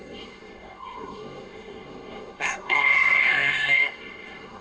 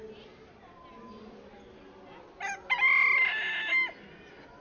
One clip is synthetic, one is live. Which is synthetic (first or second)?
first